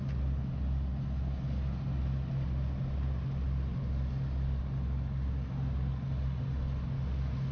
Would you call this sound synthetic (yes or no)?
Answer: no